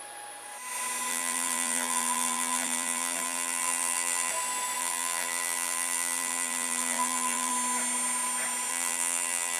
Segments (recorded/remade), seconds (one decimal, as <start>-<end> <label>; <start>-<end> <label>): 0.0-1.1 recorded; 1.1-4.3 remade; 4.3-4.8 recorded; 4.8-7.5 remade; 7.5-8.7 recorded; 8.7-9.6 remade